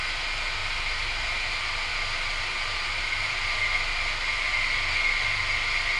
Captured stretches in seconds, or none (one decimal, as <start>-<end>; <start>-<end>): 0.0-0.6; 3.7-6.0

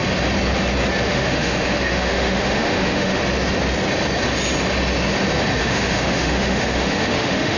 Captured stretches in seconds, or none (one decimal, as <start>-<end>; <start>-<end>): 0.0-1.1; 3.2-5.6

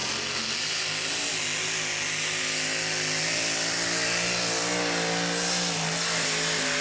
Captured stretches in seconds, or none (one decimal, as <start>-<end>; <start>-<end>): 0.0-6.8

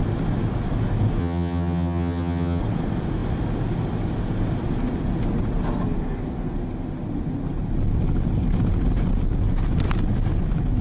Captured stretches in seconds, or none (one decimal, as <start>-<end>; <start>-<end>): 0.0-1.2; 2.6-10.8